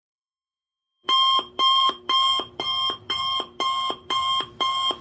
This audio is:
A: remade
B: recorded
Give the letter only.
A